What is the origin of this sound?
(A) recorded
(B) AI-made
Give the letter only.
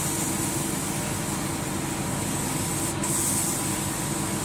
A